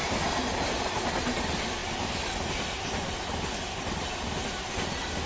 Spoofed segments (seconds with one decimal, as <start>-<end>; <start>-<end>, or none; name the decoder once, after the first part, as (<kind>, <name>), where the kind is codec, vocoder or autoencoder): none